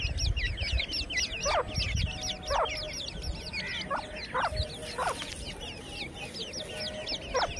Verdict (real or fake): real